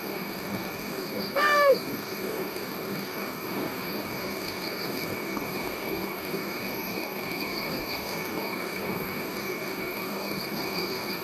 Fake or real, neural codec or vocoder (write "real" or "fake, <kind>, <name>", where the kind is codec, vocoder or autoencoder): fake, codec, DAC